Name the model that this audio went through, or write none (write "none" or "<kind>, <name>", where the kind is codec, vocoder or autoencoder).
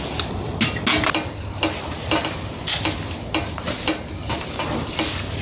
none